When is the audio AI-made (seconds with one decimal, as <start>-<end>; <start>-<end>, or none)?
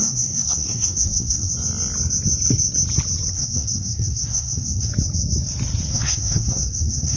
0.0-1.5; 3.3-4.9; 5.9-7.2